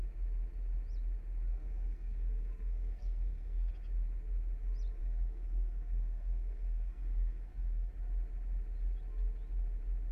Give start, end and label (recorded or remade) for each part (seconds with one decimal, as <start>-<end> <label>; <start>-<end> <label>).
0.0-1.5 recorded; 1.5-3.7 remade; 3.7-5.0 recorded; 5.0-7.9 remade; 7.9-10.1 recorded